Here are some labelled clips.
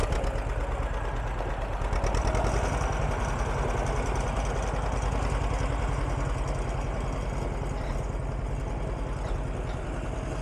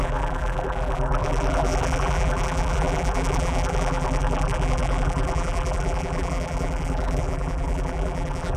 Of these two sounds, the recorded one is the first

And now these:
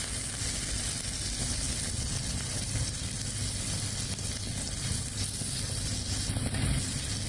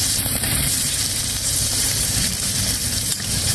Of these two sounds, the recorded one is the first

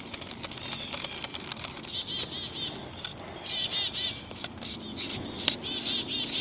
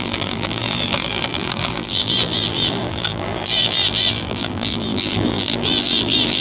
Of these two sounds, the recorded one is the first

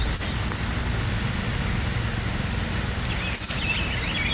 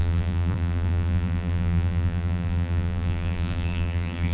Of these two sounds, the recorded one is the first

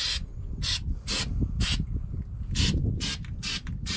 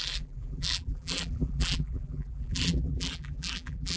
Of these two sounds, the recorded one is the first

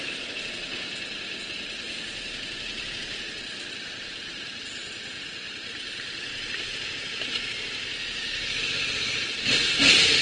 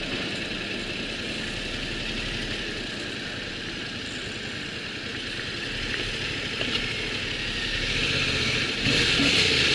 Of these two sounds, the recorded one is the second